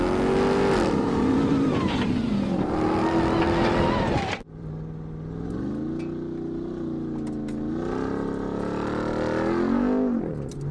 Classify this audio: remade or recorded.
recorded